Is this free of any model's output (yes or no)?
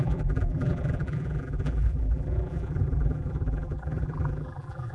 no